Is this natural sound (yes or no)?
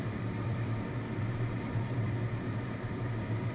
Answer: no